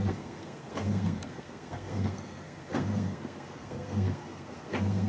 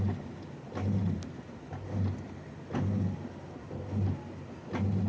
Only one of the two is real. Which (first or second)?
second